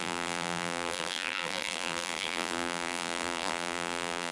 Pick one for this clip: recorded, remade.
remade